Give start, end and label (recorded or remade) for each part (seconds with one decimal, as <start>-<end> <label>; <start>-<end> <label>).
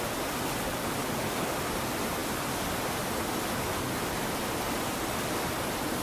0.0-2.2 remade; 2.2-6.0 recorded